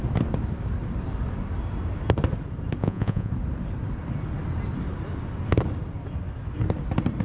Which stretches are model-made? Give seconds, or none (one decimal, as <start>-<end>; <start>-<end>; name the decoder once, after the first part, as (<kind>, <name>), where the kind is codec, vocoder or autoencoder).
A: 2.8-3.3 (vocoder, Vocos)